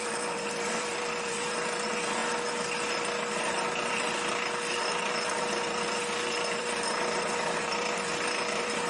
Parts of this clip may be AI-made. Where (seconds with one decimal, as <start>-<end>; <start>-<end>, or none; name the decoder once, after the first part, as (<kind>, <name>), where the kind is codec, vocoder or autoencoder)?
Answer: 0.0-2.2 (vocoder, BigVGAN v2); 5.1-8.9

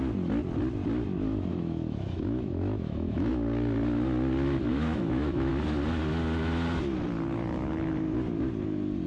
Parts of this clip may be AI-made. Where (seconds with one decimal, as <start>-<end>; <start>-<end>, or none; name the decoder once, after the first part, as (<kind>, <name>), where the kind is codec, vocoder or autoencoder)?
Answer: 1.5-3.3 (autoencoder, DAC-VAE); 4.7-5.5

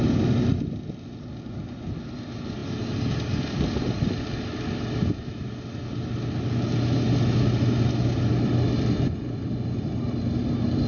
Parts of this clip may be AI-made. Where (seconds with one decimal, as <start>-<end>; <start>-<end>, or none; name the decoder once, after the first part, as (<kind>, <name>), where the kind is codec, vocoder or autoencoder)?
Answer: none